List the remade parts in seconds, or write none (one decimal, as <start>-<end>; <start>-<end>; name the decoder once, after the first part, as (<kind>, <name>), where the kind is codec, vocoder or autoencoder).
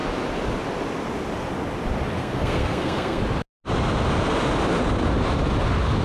2.2-3.2 (codec, SNAC)